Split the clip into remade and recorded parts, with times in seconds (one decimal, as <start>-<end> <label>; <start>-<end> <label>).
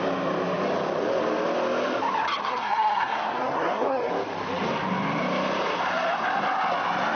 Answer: 0.0-2.4 recorded; 2.4-4.1 remade; 4.1-7.2 recorded